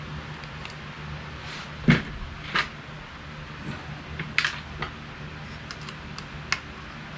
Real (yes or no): yes